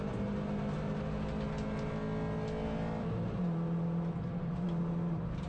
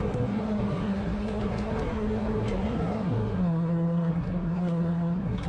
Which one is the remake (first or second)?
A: second